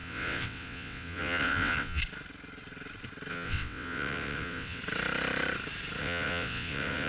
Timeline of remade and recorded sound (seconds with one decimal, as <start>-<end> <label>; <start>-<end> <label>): 0.0-2.0 remade; 2.0-3.3 recorded; 3.3-4.8 remade; 4.8-6.0 recorded; 6.0-7.1 remade